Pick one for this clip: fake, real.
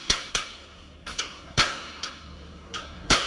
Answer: fake